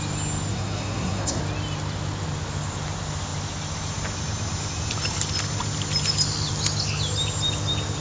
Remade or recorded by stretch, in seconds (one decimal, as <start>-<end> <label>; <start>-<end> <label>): 0.0-0.5 recorded; 0.5-1.4 remade; 1.4-8.0 recorded